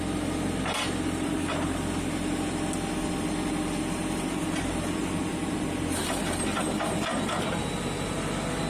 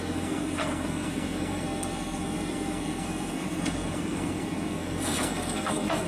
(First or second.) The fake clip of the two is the second